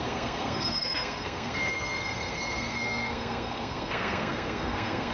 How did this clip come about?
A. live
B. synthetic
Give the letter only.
B